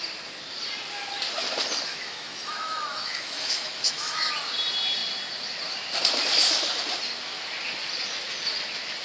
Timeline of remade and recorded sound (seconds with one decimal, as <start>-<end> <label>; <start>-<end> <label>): 0.0-1.9 recorded; 1.9-4.3 remade; 4.3-9.0 recorded

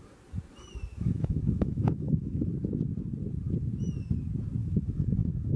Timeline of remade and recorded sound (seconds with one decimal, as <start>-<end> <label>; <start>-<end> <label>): 0.0-0.9 recorded; 0.9-2.5 remade; 2.5-4.6 recorded; 4.6-5.6 remade

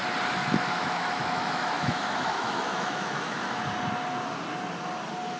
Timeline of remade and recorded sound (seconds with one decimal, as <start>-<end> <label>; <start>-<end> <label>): 0.0-0.4 recorded; 0.4-3.6 remade; 3.6-5.4 recorded

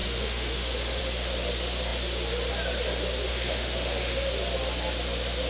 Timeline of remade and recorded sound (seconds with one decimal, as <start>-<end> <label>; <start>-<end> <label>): 0.0-1.0 remade; 1.0-3.3 recorded; 3.3-4.2 remade; 4.2-5.5 recorded

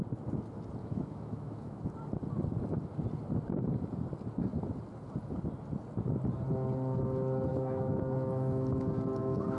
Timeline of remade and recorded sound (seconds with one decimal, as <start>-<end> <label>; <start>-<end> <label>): 0.0-0.8 recorded; 0.8-1.9 remade; 1.9-7.5 recorded; 7.5-8.0 remade; 8.0-9.6 recorded

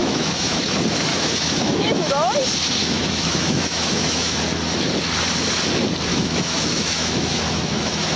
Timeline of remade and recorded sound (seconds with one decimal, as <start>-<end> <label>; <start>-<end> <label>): 0.0-0.6 remade; 0.6-1.1 recorded; 1.1-2.1 remade; 2.1-2.8 recorded; 2.8-4.4 remade; 4.4-6.1 recorded; 6.1-8.2 remade